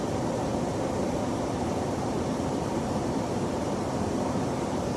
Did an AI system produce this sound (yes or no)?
yes